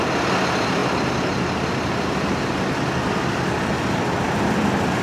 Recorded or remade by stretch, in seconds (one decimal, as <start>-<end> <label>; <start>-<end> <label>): 0.0-5.0 recorded